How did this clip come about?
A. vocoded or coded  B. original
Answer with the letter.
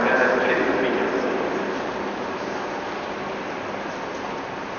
B